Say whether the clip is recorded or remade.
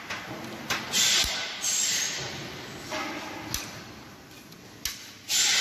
recorded